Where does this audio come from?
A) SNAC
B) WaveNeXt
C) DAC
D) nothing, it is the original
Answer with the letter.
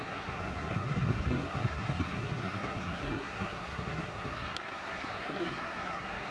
A